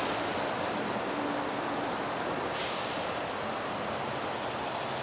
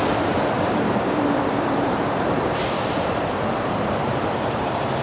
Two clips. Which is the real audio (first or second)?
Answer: first